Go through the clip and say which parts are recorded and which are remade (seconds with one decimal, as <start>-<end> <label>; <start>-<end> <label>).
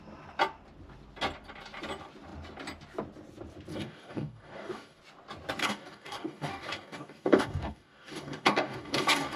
0.0-3.7 recorded; 3.7-5.0 remade; 5.0-5.6 recorded; 5.6-9.4 remade